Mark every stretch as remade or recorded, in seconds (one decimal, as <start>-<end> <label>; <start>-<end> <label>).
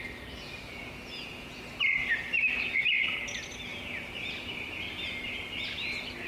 0.0-0.7 recorded; 0.7-1.6 remade; 1.6-6.3 recorded